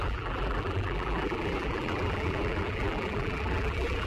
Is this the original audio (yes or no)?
no